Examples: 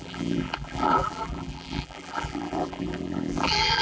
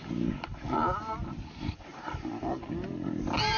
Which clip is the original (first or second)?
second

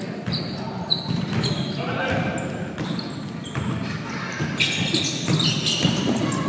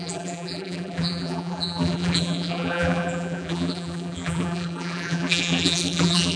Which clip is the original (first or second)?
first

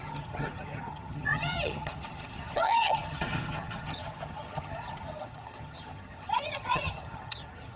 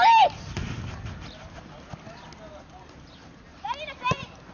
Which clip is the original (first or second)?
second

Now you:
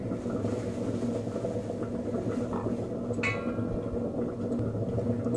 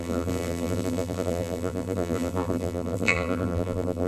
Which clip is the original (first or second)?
first